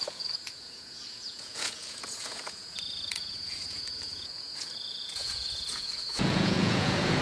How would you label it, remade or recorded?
remade